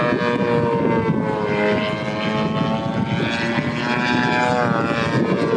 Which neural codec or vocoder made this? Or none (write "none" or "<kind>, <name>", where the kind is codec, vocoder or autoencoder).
none